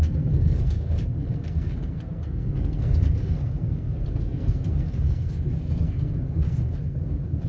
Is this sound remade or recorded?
remade